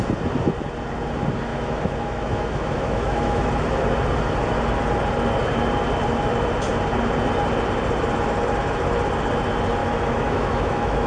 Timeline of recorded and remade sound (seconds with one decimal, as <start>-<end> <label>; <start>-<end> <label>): 0.0-1.5 recorded; 1.5-3.5 remade; 3.5-9.8 recorded; 9.8-11.1 remade